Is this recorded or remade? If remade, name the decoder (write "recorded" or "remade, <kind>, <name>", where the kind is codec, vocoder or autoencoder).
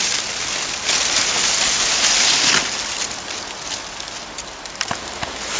recorded